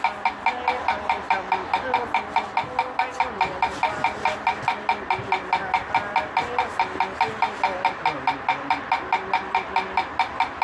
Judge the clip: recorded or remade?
recorded